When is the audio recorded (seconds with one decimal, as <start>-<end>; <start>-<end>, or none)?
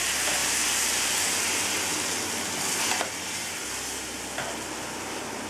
0.0-5.5